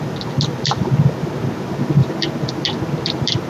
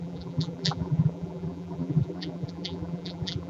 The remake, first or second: second